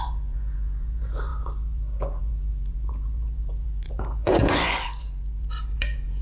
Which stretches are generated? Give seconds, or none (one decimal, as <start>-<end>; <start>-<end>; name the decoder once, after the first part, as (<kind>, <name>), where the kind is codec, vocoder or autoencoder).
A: 0.0-6.2 (vocoder, Vocos)